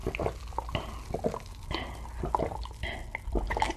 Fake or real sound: real